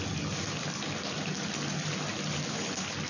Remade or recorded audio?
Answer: recorded